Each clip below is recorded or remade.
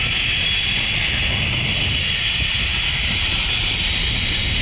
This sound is recorded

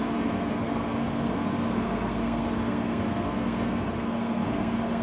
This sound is remade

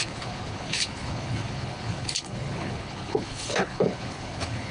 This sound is remade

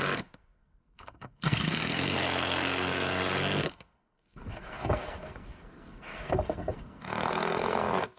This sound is remade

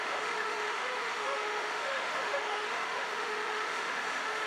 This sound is remade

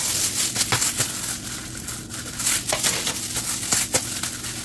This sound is recorded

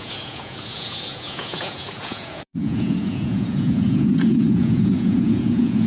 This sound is remade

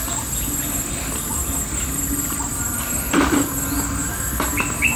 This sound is recorded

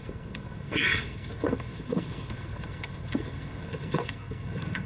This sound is remade